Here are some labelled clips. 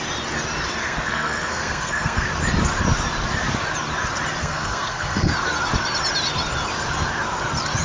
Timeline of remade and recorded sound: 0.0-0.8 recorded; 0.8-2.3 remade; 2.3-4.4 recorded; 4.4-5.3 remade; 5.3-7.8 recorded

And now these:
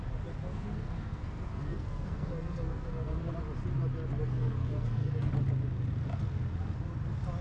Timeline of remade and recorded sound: 0.0-0.4 recorded; 0.4-3.3 remade; 3.3-4.2 recorded; 4.2-5.3 remade; 5.3-7.4 recorded